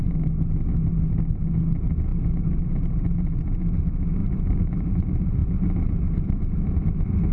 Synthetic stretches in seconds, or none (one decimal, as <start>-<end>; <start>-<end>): 4.2-4.9